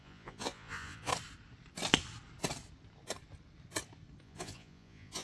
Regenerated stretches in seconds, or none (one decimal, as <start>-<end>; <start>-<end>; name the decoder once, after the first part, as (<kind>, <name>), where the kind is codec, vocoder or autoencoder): 0.0-1.1 (vocoder, Vocos); 4.2-5.2